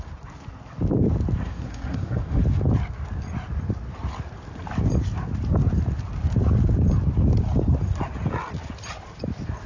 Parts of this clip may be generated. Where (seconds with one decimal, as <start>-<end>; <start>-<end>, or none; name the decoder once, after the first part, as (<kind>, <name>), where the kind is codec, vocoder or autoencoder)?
1.4-2.4 (codec, SNAC)